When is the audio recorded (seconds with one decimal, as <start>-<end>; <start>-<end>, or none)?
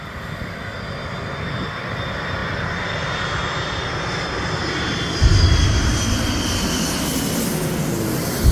0.0-8.5